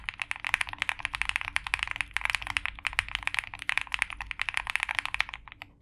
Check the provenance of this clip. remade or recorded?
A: recorded